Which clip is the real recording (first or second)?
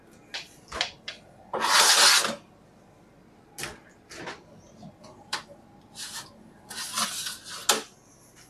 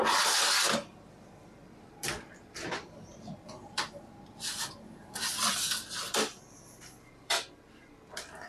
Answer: first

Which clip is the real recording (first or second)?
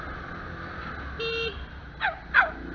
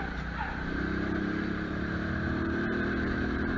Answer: first